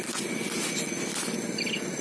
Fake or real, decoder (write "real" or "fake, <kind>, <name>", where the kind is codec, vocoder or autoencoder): real